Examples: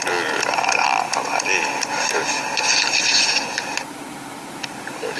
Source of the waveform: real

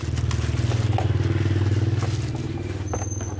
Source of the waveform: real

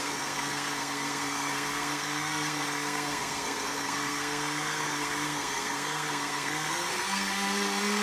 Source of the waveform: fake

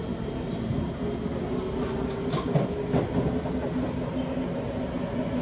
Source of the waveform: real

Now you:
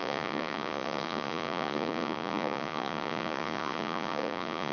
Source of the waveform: fake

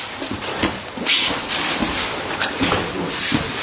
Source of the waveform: real